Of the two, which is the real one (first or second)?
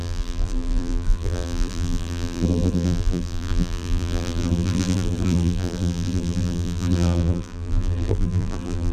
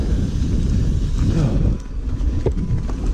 second